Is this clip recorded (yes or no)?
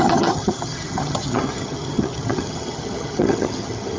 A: no